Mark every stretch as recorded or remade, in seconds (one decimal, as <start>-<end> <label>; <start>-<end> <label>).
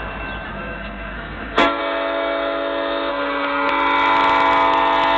0.0-0.5 recorded; 0.5-1.8 remade; 1.8-3.1 recorded; 3.1-3.7 remade; 3.7-5.2 recorded